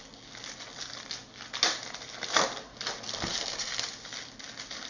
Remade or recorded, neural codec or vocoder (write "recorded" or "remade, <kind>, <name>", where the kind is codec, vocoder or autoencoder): recorded